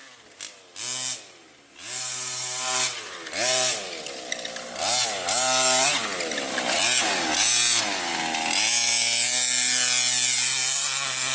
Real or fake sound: real